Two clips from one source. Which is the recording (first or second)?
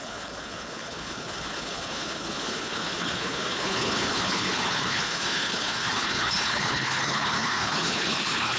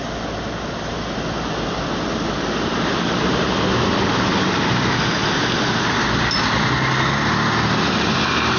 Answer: second